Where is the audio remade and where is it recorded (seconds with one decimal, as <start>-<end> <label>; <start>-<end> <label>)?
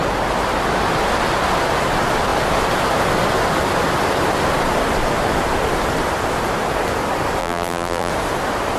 0.0-7.4 recorded; 7.4-8.1 remade; 8.1-8.8 recorded